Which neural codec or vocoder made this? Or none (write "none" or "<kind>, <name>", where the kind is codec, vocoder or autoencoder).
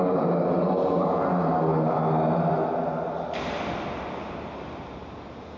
none